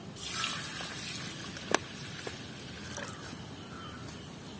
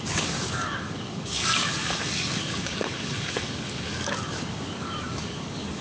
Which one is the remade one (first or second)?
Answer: second